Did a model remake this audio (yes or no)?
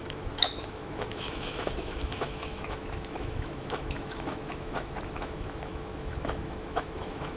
yes